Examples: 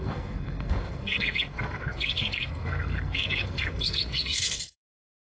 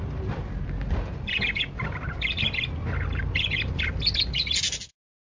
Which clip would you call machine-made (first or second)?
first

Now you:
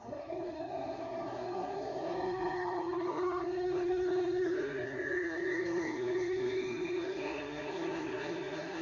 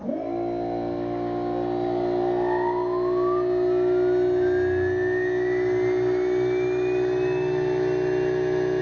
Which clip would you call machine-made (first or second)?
first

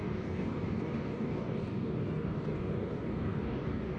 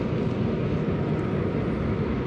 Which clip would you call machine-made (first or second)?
first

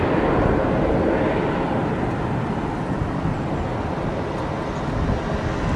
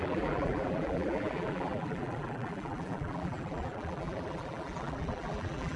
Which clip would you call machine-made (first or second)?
second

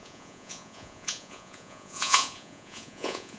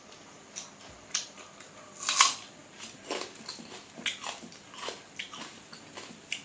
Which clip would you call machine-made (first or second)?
first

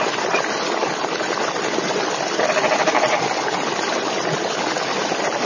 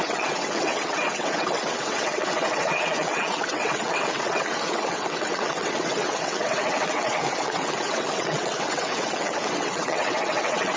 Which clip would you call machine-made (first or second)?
second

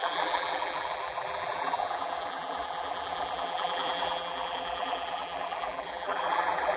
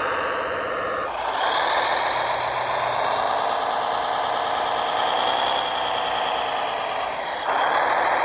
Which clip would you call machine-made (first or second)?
first